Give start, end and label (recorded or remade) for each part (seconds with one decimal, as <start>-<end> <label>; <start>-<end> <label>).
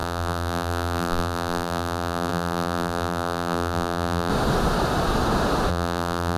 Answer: 0.0-4.3 remade; 4.3-5.7 recorded; 5.7-6.4 remade